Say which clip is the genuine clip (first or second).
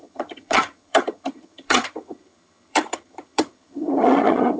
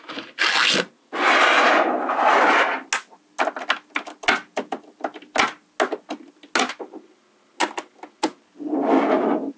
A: second